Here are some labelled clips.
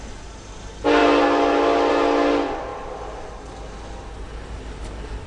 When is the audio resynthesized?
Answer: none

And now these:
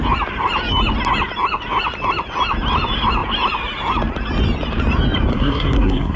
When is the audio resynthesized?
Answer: 5.3-6.2

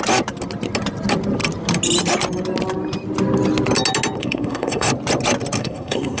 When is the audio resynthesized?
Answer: 4.2-4.9; 5.6-6.2

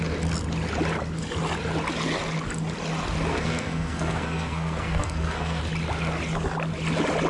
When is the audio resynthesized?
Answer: 3.3-5.6

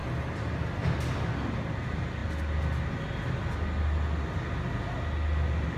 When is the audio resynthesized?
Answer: none

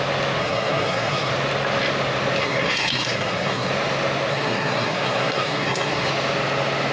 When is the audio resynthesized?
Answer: 0.4-1.3; 2.4-3.7; 4.3-6.1

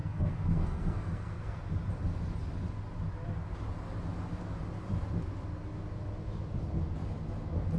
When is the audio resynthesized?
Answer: 0.0-1.6

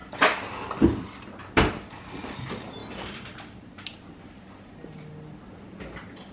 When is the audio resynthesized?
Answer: none